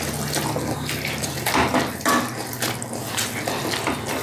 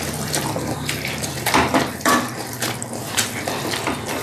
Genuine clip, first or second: first